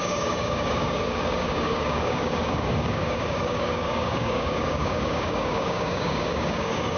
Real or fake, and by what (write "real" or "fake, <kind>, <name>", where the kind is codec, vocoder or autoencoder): fake, codec, DAC